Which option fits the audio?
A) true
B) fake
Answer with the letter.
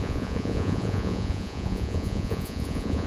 B